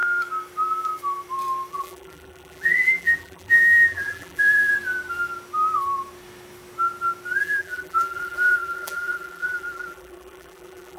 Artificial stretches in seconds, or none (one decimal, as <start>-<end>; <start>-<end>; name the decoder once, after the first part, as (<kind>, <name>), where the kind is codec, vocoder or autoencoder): 1.7-4.7 (vocoder, BigVGAN v2); 7.4-11.0